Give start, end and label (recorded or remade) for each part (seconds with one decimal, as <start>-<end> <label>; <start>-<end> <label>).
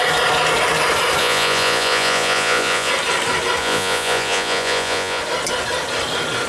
0.0-1.2 recorded; 1.2-2.9 remade; 2.9-3.6 recorded; 3.6-5.2 remade; 5.2-6.5 recorded